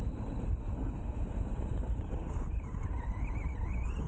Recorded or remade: remade